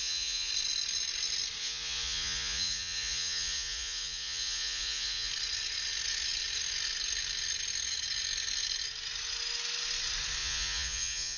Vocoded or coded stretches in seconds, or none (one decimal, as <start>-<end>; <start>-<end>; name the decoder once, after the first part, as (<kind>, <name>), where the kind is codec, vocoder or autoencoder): 0.0-0.5 (vocoder, Vocos); 1.6-5.3; 10.4-11.4